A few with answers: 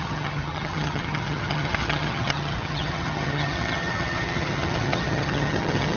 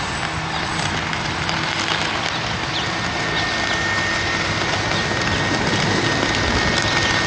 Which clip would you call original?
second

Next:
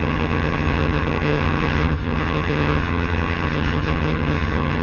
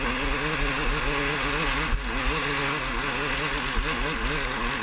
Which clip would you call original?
second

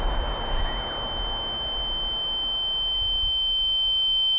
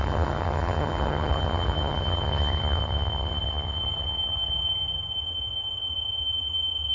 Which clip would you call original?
first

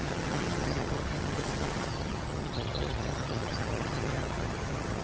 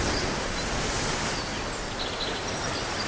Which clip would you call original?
second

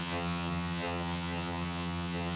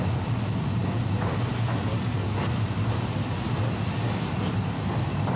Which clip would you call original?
second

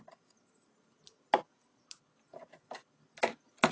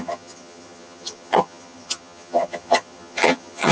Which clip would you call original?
first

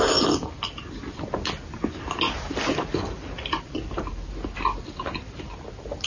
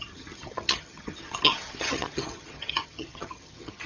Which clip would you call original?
first